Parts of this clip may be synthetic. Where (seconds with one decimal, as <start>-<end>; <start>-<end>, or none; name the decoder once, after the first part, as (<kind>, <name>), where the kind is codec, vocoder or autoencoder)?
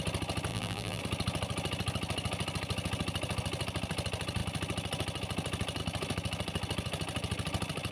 0.5-1.0 (vocoder, BigVGAN v2)